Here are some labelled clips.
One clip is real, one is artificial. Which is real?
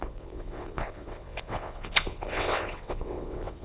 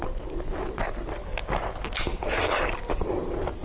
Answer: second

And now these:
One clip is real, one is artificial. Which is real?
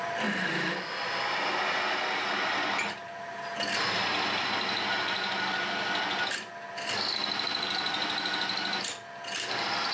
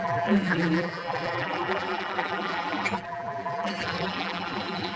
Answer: first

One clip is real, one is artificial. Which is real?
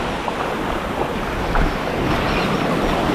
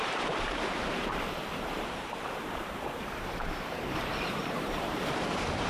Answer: first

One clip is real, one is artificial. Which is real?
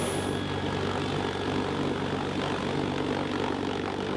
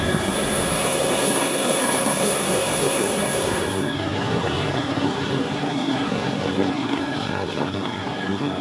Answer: first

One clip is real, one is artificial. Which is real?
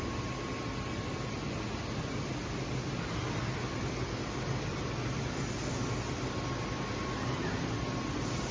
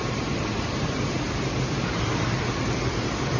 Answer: first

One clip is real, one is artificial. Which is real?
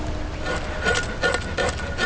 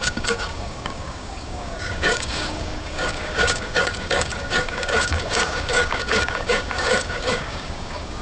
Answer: first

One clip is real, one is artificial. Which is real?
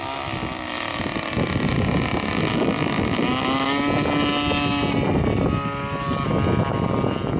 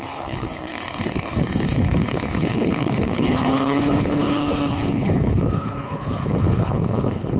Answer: first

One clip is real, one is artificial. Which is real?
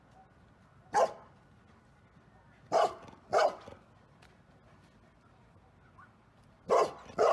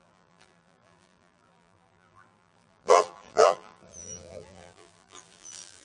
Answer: first